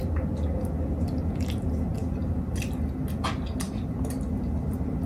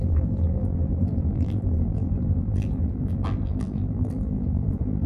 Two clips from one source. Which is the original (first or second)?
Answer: first